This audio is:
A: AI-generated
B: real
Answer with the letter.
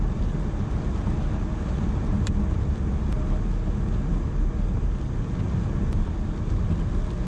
B